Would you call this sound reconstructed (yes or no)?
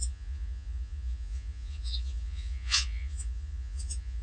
yes